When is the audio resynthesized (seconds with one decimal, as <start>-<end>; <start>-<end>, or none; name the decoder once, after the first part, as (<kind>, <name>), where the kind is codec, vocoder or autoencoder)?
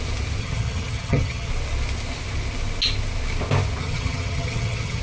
0.4-1.5 (vocoder, HiFi-GAN); 3.8-5.0